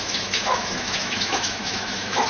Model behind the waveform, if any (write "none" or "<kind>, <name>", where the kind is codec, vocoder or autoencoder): autoencoder, DAC-VAE